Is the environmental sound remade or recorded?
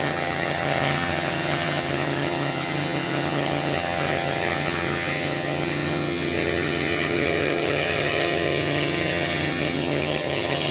remade